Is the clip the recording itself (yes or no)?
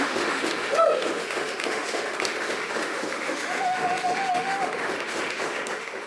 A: no